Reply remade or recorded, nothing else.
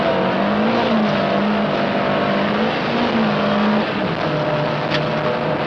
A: recorded